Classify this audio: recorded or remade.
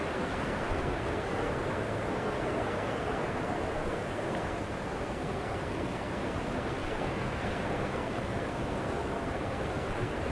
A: remade